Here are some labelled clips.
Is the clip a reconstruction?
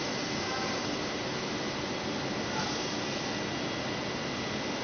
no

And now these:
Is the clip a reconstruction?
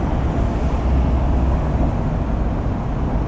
no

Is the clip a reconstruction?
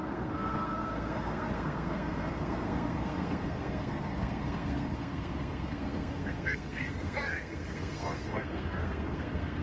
yes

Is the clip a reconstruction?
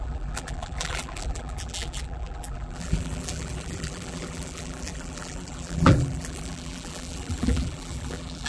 yes